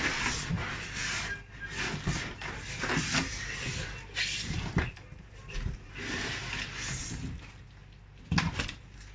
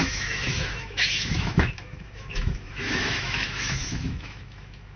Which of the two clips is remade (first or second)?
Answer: second